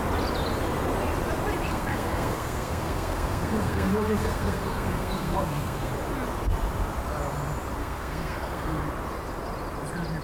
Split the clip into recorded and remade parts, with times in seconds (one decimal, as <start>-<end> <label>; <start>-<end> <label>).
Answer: 0.0-1.7 recorded; 1.7-5.9 remade; 5.9-7.8 recorded; 7.8-8.8 remade; 8.8-10.2 recorded